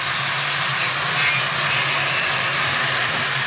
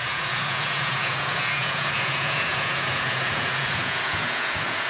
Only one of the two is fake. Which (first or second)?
second